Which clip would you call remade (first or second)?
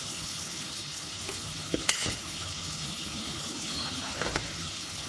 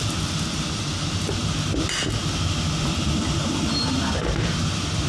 first